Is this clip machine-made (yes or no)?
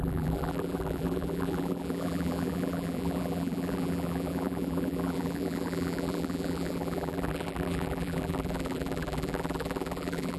yes